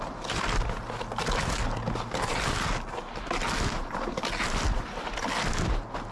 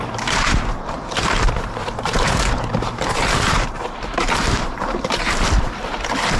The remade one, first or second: second